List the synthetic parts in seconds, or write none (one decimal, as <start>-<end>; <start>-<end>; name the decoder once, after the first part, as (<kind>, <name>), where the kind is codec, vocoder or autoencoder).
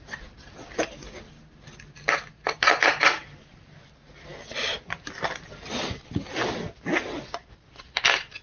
none